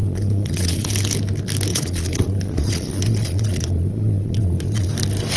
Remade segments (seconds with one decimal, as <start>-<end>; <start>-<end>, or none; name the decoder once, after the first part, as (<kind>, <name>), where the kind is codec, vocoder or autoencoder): 0.0-0.9 (vocoder, Vocos); 1.7-4.9